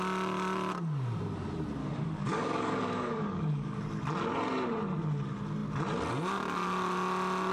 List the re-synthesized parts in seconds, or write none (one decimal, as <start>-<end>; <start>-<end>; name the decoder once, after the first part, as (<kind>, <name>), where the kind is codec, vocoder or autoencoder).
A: 1.8-3.8 (codec, DAC)